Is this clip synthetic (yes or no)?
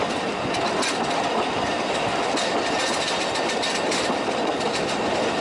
no